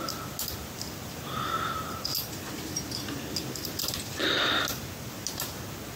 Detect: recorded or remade recorded